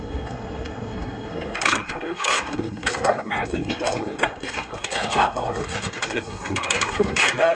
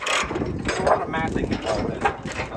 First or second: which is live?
second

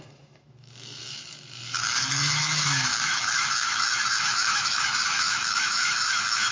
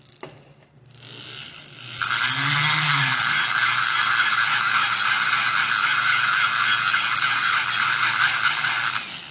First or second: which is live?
second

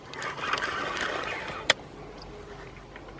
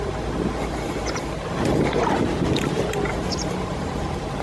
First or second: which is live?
first